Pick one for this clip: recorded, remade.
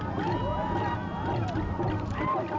recorded